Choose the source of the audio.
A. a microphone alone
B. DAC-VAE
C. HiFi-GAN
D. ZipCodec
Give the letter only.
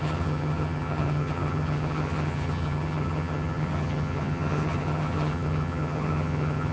C